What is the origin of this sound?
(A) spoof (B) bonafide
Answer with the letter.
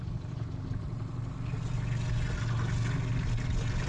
B